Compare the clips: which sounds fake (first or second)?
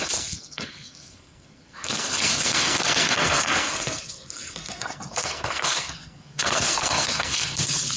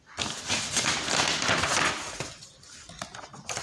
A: first